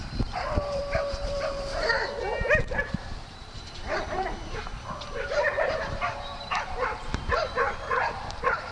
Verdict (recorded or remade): remade